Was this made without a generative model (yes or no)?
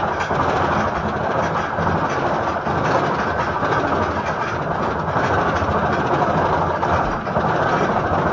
yes